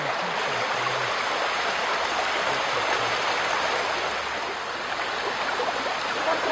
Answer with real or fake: real